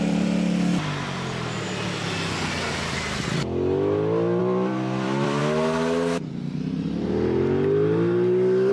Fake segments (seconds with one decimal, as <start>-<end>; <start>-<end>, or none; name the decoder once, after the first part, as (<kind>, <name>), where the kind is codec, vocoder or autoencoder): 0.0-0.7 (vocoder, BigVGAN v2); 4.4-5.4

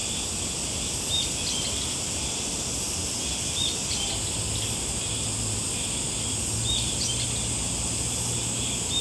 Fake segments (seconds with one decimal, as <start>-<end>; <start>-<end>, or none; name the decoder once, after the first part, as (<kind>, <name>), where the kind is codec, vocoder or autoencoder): 0.0-0.9 (vocoder, BigVGAN v2); 3.0-6.0

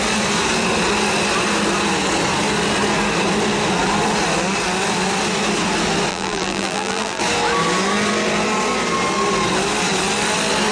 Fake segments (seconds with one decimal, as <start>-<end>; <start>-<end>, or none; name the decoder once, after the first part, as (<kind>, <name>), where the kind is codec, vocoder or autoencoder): 6.1-7.2 (vocoder, BigVGAN v2)

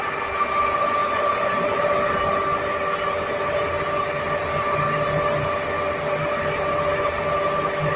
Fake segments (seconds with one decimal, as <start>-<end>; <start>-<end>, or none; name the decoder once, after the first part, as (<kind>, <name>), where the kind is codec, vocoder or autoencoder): 1.0-2.1 (vocoder, BigVGAN v2)

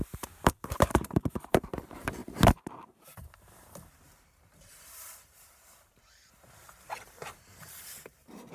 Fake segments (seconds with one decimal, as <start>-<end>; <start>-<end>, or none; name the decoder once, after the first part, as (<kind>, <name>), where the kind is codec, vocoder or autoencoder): 0.0-8.5 (vocoder, BigVGAN v2)

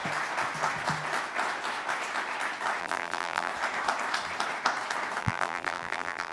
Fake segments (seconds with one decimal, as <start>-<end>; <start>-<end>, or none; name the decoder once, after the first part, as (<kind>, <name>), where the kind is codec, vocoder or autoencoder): 2.8-3.5 (vocoder, BigVGAN v2); 5.2-6.3

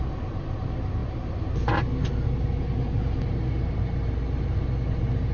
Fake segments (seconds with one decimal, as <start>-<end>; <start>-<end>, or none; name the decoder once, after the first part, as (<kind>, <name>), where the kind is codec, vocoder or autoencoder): none